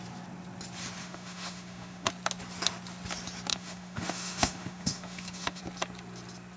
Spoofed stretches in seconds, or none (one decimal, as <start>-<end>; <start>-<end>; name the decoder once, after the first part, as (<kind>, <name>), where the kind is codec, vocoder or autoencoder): 1.0-2.1 (autoencoder, DAC-VAE); 3.5-5.6